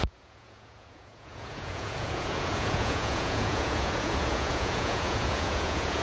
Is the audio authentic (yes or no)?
no